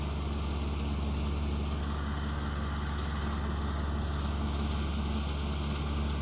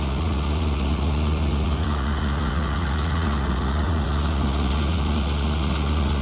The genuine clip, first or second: first